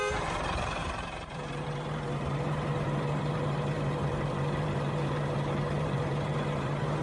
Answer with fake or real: fake